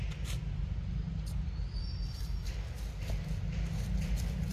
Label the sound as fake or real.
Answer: real